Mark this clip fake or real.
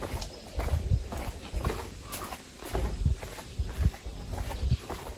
real